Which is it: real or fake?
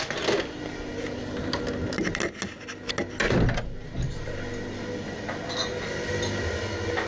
real